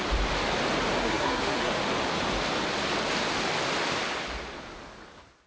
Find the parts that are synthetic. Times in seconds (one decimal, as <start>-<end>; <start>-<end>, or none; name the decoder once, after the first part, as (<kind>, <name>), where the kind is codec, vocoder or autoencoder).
1.0-1.7 (codec, SNAC)